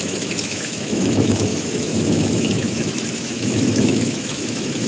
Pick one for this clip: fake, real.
fake